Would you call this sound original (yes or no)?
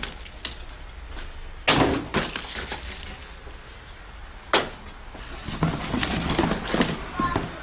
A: yes